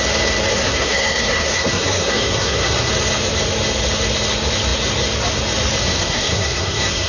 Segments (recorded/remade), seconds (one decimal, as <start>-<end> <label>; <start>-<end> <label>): 0.0-0.5 recorded; 0.5-2.9 remade; 2.9-5.8 recorded; 5.8-7.1 remade